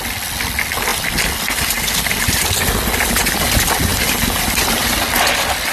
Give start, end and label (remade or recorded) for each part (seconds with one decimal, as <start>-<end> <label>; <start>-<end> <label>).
0.0-5.7 recorded